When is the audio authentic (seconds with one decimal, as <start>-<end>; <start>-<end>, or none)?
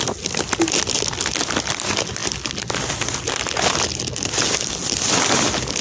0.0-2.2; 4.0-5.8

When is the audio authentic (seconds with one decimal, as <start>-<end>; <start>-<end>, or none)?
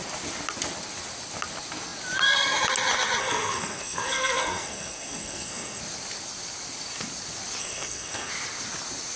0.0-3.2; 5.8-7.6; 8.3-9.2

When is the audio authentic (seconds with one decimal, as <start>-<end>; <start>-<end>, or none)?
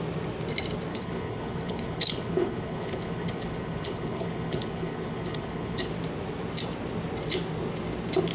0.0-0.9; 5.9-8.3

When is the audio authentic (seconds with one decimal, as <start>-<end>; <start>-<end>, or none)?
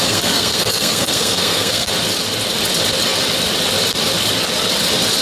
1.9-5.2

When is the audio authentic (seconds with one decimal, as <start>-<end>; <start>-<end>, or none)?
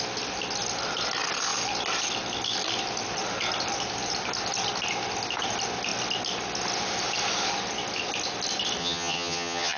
0.0-8.8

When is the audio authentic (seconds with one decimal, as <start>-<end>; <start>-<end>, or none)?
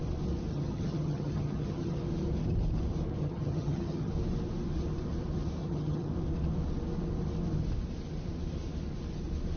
0.0-0.5; 2.0-3.2; 4.1-5.6; 6.1-9.6